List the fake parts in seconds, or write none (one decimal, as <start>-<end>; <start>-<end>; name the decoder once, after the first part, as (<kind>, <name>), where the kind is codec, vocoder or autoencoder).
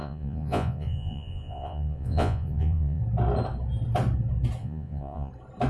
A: 0.0-3.0 (vocoder, Vocos); 4.6-5.3